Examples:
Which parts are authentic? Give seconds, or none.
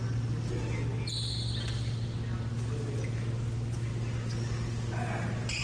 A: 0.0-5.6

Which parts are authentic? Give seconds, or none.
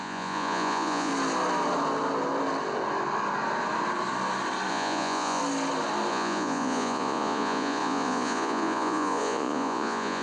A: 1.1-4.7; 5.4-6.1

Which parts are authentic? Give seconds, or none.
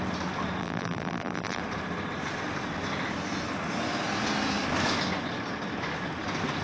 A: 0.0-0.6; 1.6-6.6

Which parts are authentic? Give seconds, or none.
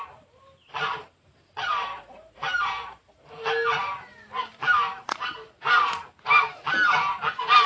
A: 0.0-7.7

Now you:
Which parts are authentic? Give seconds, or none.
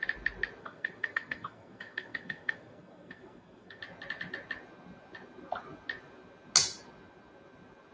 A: 0.0-0.6; 3.8-7.9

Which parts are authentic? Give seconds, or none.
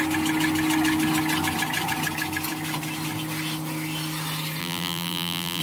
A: 0.0-4.6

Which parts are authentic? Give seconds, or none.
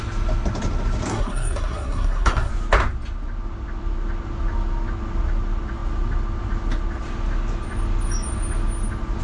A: 0.0-1.1; 2.5-9.2